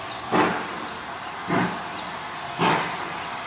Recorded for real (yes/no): yes